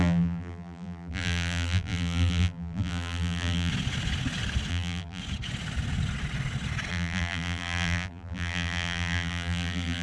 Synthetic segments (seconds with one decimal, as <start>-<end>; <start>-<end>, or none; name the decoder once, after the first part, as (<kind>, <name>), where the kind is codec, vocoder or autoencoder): 0.0-3.7 (vocoder, BigVGAN v2); 4.7-5.2; 6.9-10.0